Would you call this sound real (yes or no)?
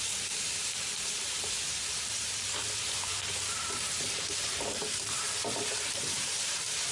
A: no